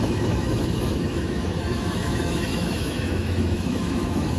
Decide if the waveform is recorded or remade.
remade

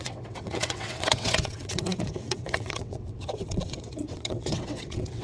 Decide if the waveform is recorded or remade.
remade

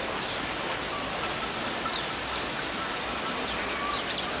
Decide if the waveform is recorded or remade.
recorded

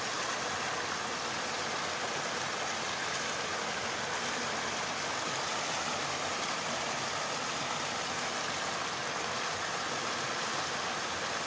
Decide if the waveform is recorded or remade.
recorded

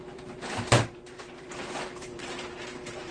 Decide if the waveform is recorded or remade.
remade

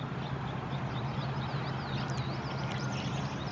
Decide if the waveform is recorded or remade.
recorded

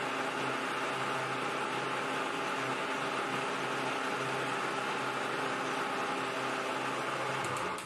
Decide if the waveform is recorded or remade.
recorded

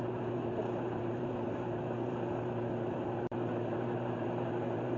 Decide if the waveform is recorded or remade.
remade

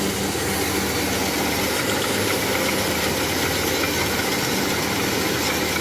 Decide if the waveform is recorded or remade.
recorded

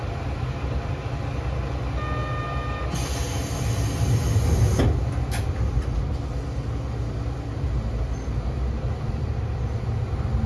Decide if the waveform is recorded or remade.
recorded